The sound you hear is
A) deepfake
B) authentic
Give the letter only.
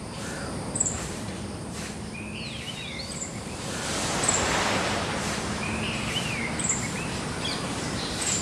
A